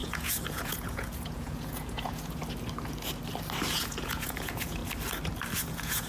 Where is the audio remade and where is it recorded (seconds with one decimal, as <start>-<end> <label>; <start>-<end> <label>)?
0.0-2.4 remade; 2.4-3.7 recorded; 3.7-4.8 remade; 4.8-5.6 recorded; 5.6-6.1 remade